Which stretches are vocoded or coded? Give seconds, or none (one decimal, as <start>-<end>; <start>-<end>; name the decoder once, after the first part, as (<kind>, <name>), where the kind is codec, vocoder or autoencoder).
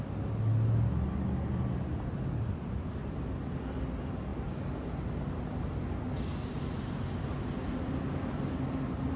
none